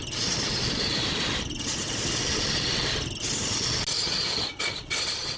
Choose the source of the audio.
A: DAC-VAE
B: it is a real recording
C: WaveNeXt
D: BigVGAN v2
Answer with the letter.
B